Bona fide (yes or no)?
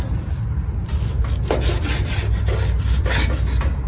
yes